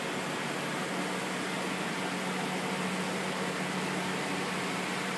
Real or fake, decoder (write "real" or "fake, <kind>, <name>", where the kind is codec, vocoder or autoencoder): real